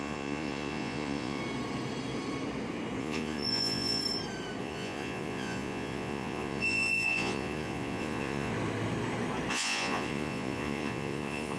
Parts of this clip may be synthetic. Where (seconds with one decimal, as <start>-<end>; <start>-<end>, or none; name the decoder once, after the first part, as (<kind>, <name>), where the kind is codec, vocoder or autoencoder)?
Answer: 0.0-1.4 (vocoder, Vocos); 3.0-4.0; 4.6-8.5; 9.5-11.6